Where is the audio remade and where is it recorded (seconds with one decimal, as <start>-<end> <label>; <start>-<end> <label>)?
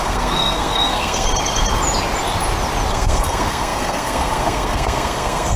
0.0-1.3 remade; 1.3-2.9 recorded; 2.9-5.6 remade